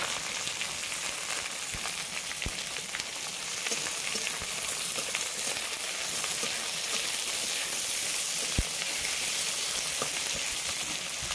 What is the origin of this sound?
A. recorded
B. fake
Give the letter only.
A